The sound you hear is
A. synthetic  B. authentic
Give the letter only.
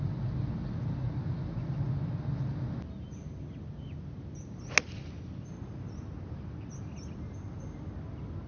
B